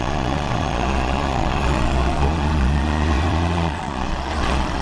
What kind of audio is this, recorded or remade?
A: remade